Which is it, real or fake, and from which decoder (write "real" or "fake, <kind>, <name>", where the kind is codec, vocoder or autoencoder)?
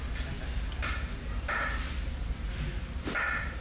real